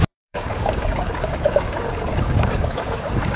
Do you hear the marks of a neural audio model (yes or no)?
yes